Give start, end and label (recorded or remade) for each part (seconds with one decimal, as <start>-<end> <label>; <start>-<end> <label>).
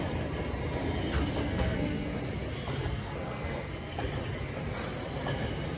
0.0-1.4 recorded; 1.4-2.1 remade; 2.1-2.8 recorded; 2.8-4.0 remade; 4.0-5.8 recorded